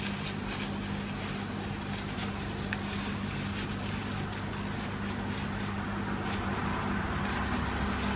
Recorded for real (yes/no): yes